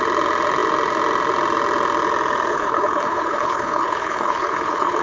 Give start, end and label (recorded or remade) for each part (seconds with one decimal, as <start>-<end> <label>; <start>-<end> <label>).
0.0-2.5 recorded; 2.5-5.0 remade